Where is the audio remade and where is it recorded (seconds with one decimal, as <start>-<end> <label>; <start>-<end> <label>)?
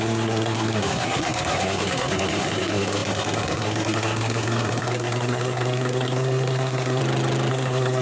0.0-7.0 remade; 7.0-7.5 recorded; 7.5-8.0 remade